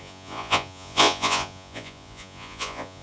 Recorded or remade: remade